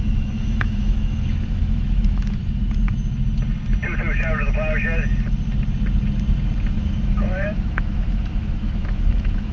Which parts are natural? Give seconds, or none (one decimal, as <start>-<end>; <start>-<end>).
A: 2.4-6.8